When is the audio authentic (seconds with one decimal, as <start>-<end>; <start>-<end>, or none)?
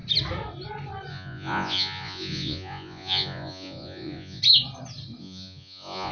0.0-1.1; 4.4-5.2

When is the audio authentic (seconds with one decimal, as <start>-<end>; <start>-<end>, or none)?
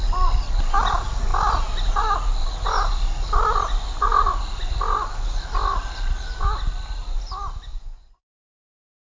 0.0-7.7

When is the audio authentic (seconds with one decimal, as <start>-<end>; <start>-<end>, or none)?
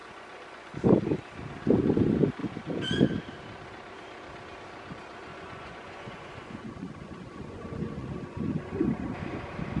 0.7-5.3; 8.7-9.8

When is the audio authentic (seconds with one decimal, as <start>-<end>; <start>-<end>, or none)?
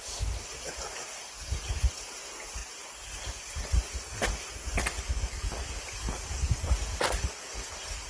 0.0-8.1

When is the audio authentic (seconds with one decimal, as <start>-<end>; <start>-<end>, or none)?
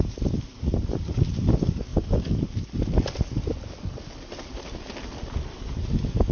0.0-6.3